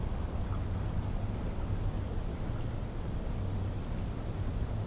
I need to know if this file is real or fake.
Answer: real